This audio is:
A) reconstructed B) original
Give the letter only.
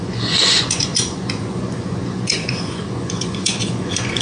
A